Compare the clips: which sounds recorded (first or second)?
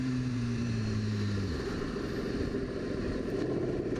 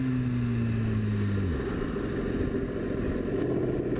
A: second